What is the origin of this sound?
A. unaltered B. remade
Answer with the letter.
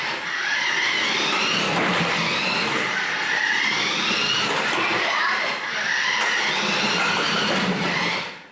A